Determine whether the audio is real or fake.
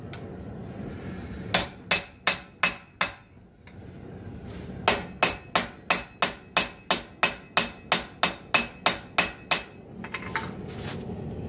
real